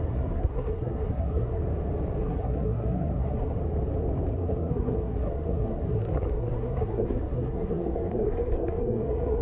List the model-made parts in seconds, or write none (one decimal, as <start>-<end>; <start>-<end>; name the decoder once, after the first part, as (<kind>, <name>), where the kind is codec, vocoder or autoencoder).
0.0-1.6 (codec, SNAC); 2.2-3.6; 4.3-9.4